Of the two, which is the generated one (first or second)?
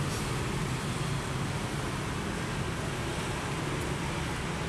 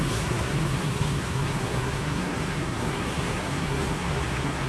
second